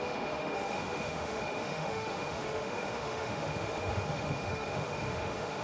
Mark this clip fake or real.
fake